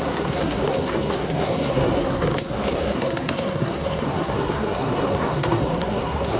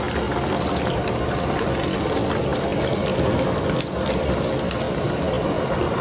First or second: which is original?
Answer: second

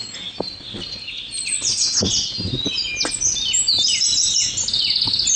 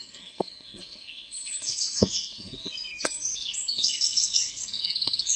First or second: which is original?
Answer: first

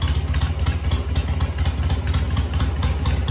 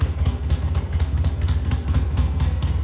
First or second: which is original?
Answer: first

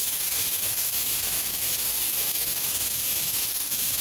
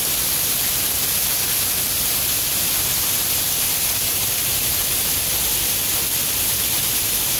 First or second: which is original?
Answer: second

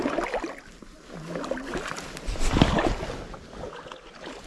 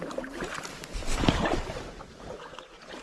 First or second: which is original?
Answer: first